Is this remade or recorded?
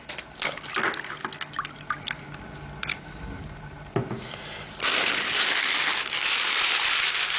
recorded